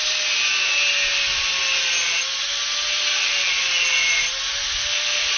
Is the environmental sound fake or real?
real